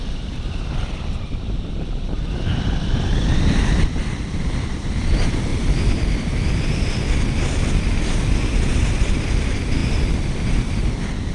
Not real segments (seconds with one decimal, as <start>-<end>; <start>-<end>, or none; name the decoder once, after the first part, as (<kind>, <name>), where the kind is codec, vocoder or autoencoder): 0.0-5.5 (vocoder, BigVGAN v2); 9.1-11.3